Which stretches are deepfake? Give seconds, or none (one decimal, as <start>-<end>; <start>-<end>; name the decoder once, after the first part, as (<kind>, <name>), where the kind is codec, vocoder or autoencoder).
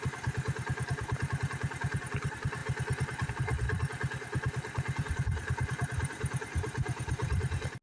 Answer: none